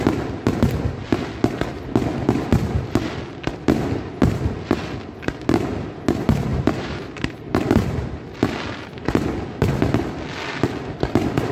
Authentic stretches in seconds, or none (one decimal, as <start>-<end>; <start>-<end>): 0.0-6.5; 7.7-11.5